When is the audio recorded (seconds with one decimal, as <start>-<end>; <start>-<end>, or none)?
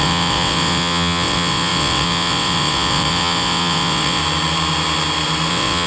4.2-5.5